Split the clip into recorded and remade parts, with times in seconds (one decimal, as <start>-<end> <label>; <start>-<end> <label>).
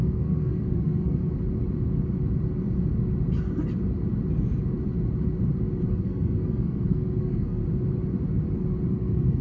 0.0-1.2 remade; 1.2-5.9 recorded; 5.9-7.6 remade; 7.6-8.9 recorded; 8.9-9.4 remade